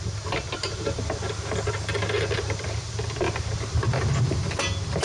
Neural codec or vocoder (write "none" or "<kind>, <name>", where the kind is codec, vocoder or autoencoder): none